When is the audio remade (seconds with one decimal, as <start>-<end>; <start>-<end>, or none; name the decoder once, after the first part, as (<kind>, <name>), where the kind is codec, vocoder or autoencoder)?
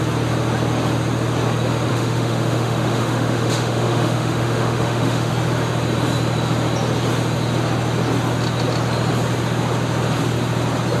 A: 1.9-5.3 (autoencoder, DAC-VAE)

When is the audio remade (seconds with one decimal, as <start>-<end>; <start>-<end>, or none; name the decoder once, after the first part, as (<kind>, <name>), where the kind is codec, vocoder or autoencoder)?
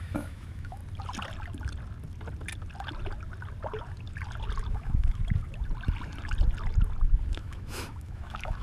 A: 0.0-0.8 (autoencoder, DAC-VAE); 4.7-5.2; 7.3-8.6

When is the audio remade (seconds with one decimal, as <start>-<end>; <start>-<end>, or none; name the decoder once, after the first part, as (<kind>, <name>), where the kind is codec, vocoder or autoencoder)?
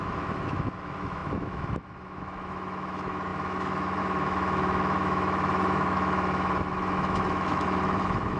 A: 0.0-8.4 (autoencoder, DAC-VAE)